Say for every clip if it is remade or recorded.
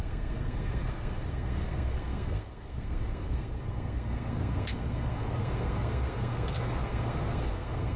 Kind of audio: remade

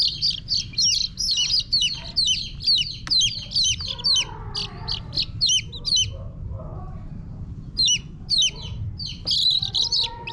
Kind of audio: recorded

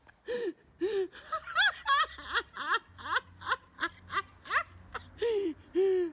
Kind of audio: recorded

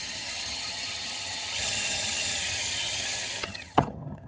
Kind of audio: remade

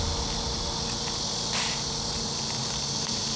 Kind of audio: recorded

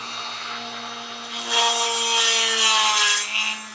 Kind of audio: recorded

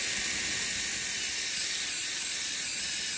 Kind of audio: remade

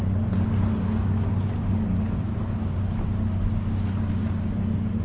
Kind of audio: recorded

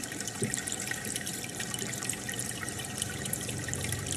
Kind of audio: remade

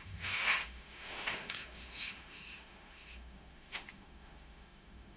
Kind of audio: remade